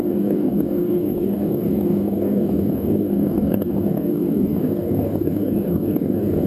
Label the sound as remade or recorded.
remade